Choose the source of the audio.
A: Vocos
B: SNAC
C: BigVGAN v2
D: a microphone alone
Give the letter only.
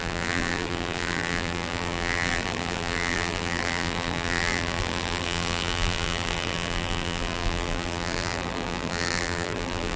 C